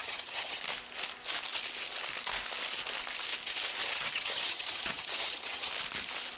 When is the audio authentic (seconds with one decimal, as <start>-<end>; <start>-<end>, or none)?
0.6-3.8; 5.7-6.4